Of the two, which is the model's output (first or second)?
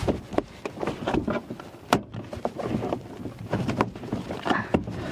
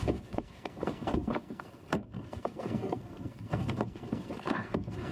second